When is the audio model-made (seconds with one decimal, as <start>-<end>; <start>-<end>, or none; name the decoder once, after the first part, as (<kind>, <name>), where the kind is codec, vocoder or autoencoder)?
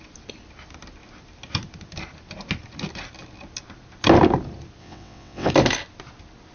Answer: 4.8-5.5 (vocoder, WaveNeXt)